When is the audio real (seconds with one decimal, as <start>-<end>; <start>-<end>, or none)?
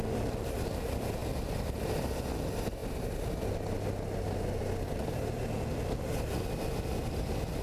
0.0-7.6